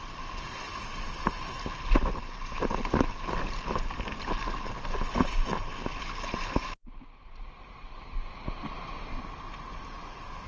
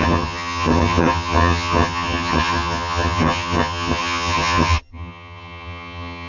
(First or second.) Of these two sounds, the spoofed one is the second